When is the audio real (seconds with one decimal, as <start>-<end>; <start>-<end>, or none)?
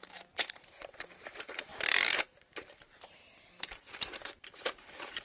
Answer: none